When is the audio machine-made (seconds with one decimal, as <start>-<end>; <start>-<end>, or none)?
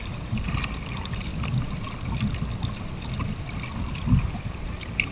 0.0-1.3; 4.2-5.1